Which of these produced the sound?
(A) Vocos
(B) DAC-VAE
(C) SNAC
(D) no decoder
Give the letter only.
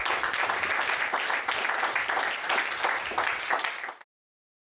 D